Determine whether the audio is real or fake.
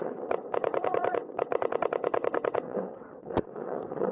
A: fake